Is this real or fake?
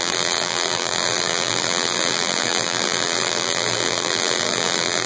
fake